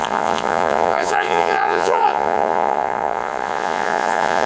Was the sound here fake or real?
fake